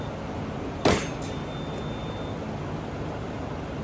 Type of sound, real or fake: real